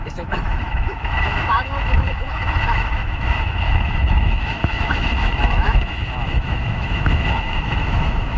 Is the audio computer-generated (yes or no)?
yes